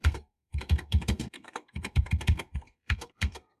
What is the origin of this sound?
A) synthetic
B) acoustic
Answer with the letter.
A